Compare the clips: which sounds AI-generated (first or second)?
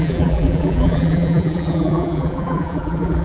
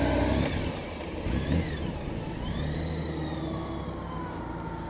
first